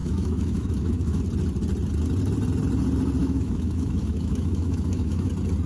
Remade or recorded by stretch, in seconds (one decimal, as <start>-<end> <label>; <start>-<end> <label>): 0.0-1.2 remade; 1.2-3.2 recorded; 3.2-5.3 remade; 5.3-5.7 recorded